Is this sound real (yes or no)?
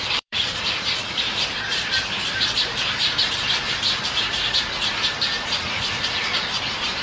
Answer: no